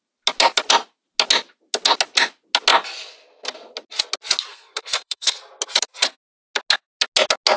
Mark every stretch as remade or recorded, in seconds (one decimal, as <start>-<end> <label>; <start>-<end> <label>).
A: 0.0-4.5 recorded; 4.5-5.4 remade; 5.4-7.6 recorded